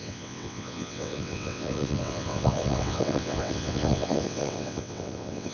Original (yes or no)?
no